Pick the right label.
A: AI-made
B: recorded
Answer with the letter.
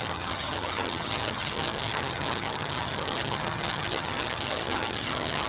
A